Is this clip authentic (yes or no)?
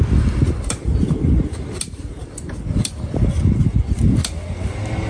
yes